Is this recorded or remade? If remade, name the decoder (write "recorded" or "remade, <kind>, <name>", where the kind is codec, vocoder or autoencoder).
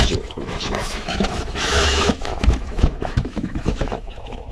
remade, autoencoder, DAC-VAE